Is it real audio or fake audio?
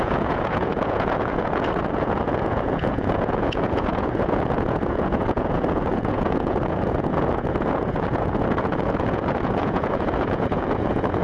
fake